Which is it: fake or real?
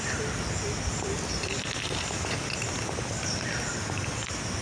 real